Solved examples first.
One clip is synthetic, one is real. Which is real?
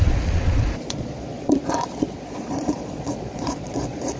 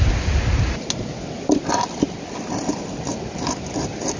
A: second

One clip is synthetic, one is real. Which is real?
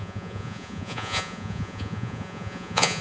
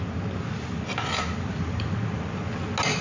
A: second